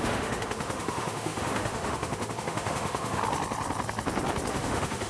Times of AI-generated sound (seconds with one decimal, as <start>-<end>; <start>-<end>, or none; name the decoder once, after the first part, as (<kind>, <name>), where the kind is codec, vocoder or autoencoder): 0.0-3.2 (autoencoder, DAC-VAE); 4.5-5.1

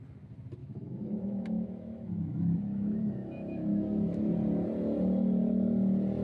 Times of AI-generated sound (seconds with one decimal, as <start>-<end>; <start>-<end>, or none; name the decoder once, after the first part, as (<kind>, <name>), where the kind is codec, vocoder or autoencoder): 0.6-4.3 (autoencoder, DAC-VAE)

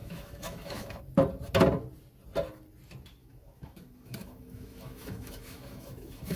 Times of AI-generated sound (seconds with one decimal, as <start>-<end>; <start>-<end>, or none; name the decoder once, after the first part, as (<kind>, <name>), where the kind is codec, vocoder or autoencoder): 0.0-1.0 (autoencoder, DAC-VAE); 3.2-6.4

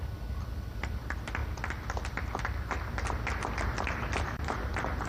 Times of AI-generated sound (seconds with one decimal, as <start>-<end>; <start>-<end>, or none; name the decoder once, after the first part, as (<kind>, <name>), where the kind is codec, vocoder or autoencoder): none

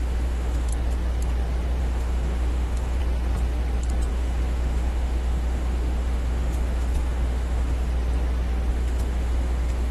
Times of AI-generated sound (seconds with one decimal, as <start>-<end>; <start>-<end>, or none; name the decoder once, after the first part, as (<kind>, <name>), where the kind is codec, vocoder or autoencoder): 0.0-0.7 (autoencoder, DAC-VAE); 1.8-3.0; 4.1-7.9; 8.7-9.9

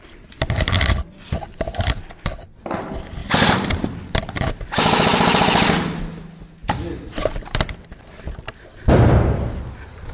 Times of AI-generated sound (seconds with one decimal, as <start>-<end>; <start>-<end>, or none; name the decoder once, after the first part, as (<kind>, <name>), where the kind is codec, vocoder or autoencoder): none

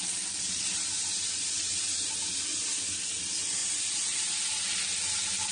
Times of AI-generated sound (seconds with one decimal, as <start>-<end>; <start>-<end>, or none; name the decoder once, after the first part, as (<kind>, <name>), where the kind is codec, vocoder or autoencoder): none